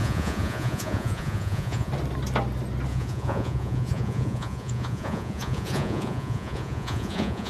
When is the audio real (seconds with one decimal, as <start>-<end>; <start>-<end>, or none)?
1.9-2.9